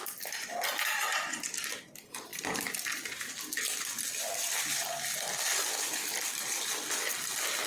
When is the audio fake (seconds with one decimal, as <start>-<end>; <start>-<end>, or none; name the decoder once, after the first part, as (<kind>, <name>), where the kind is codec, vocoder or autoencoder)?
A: none